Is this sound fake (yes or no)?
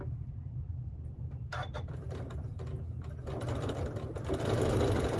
no